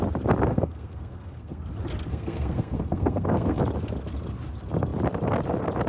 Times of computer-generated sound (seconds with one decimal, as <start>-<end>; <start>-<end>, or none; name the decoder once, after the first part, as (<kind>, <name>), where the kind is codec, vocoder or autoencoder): 0.5-1.6 (codec, SNAC); 2.1-3.6